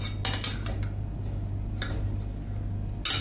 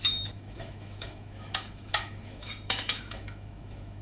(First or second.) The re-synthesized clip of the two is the second